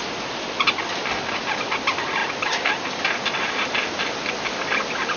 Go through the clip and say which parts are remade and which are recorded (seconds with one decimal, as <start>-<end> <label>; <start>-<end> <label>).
0.0-5.2 recorded

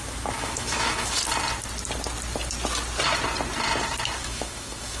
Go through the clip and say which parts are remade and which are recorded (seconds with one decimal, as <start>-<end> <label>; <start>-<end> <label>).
0.0-1.2 remade; 1.2-4.2 recorded; 4.2-5.0 remade

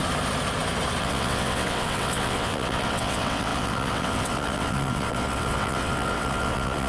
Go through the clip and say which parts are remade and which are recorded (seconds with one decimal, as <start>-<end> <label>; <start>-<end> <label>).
0.0-1.0 recorded; 1.0-6.9 remade